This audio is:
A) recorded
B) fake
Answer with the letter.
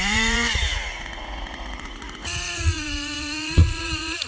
B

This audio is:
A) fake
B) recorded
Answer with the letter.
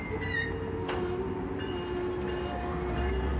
B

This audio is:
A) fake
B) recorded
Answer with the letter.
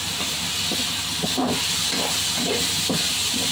B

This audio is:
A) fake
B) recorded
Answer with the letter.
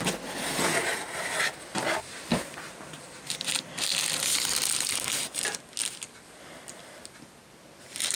B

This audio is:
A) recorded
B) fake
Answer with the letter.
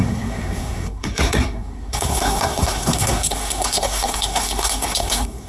B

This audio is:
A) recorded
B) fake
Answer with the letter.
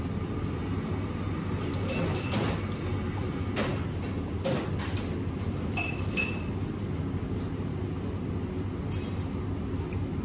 A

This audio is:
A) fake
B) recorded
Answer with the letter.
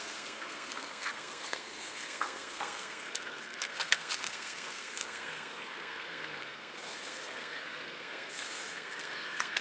A